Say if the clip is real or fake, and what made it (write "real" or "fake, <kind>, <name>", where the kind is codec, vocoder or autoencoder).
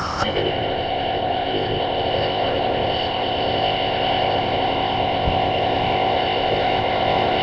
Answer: fake, codec, ZipCodec